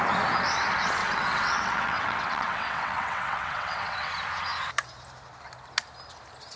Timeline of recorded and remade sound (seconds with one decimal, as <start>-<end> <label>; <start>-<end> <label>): 0.0-1.0 recorded; 1.0-4.1 remade; 4.1-6.6 recorded